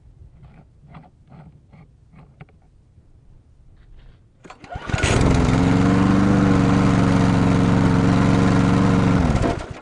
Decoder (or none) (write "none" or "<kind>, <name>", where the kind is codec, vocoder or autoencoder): none